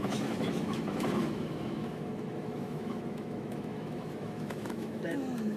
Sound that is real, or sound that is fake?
fake